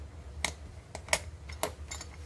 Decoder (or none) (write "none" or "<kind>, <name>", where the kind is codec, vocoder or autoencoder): none